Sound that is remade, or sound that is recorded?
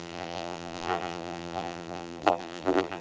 remade